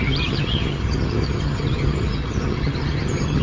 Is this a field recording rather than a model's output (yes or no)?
no